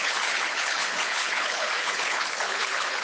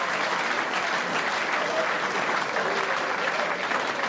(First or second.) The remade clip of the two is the first